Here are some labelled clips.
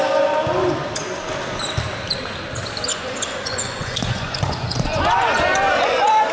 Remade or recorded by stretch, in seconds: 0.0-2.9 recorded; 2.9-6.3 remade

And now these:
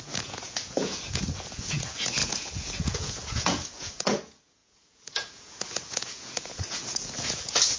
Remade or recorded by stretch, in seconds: 0.0-7.8 remade

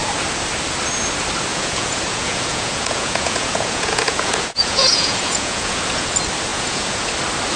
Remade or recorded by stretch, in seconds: 0.0-1.5 recorded; 1.5-6.1 remade; 6.1-6.5 recorded; 6.5-7.1 remade; 7.1-7.6 recorded

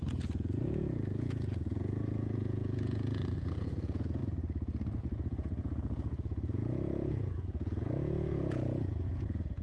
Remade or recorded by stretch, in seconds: 0.0-4.2 remade; 4.2-5.0 recorded; 5.0-9.6 remade

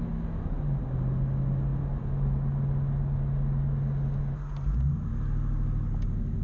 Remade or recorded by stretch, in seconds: 0.0-6.4 recorded

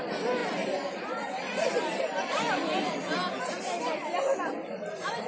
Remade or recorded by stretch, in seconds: 0.0-5.3 recorded

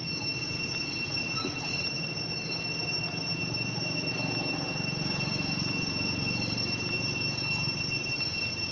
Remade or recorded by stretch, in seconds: 0.0-1.1 recorded; 1.1-1.9 remade; 1.9-8.7 recorded

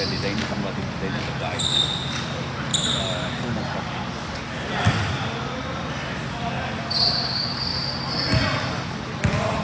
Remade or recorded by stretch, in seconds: 0.0-9.6 recorded